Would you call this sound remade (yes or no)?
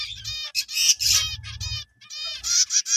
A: no